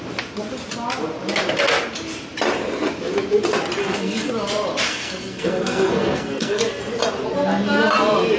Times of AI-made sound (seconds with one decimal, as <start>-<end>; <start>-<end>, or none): 3.8-4.3; 4.9-6.6